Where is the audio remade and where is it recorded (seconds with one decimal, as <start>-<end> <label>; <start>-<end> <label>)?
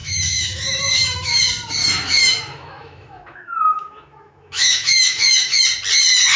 0.0-1.4 remade; 1.4-1.8 recorded; 1.8-5.6 remade; 5.6-6.4 recorded